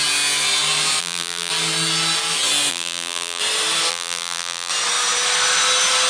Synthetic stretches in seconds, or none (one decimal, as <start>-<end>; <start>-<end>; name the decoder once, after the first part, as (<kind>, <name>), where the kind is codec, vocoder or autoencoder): 1.0-1.5 (vocoder, BigVGAN v2); 2.7-3.4; 3.9-4.7